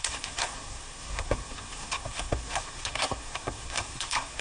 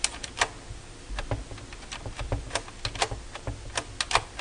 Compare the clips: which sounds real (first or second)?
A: second